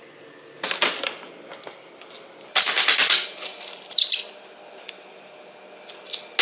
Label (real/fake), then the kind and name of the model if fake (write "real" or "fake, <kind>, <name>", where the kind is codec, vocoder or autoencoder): real